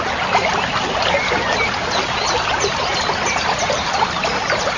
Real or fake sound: real